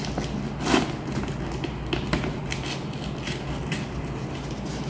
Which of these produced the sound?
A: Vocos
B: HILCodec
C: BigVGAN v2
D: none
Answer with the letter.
D